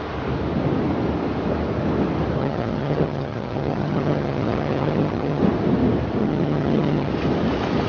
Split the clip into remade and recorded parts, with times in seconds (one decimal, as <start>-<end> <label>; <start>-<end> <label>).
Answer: 0.0-2.4 recorded; 2.4-5.4 remade; 5.4-6.2 recorded; 6.2-7.1 remade; 7.1-7.9 recorded